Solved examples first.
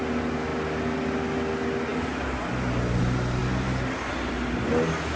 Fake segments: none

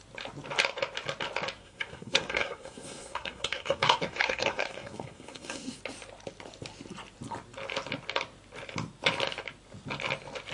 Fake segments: 1.6-5.8 (codec, SNAC)

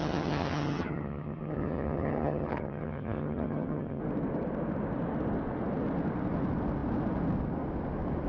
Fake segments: 0.0-4.0 (vocoder, HiFi-GAN)

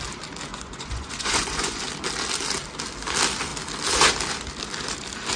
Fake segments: 0.5-1.8 (vocoder, Vocos)

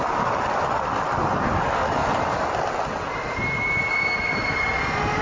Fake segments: none

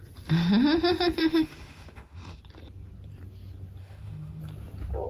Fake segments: 1.2-2.4 (autoencoder, DAC-VAE); 3.8-4.4